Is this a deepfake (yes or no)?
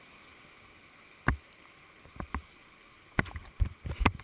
no